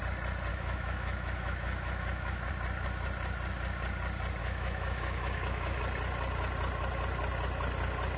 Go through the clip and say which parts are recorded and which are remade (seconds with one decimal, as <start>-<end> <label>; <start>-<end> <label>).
0.0-0.5 recorded; 0.5-2.5 remade; 2.5-4.4 recorded; 4.4-5.8 remade; 5.8-8.2 recorded